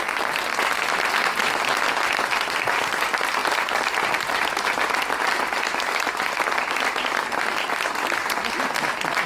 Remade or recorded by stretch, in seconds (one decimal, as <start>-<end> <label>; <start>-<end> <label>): 0.0-9.3 recorded